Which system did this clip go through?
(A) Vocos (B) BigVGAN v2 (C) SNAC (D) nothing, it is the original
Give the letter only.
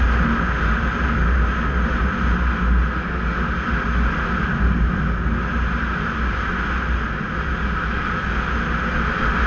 D